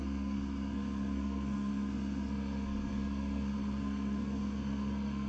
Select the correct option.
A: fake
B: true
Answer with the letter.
A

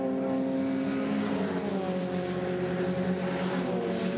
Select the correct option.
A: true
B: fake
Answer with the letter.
A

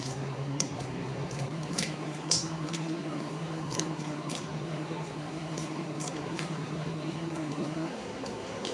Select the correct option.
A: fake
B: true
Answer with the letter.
A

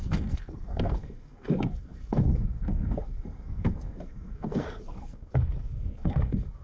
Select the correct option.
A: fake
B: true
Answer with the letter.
A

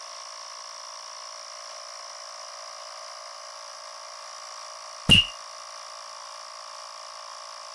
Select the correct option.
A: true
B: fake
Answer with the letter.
A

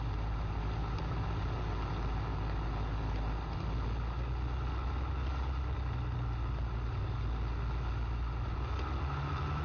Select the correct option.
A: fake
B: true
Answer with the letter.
B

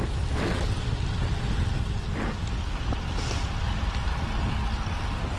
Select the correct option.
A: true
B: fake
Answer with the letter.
A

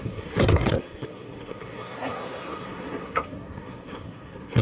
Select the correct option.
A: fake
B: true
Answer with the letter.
A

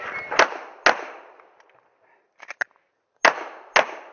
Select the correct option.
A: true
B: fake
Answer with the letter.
A